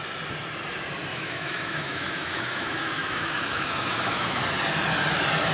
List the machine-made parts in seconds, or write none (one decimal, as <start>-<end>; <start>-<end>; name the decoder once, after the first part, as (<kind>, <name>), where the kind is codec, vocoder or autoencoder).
1.1-4.4 (autoencoder, DAC-VAE)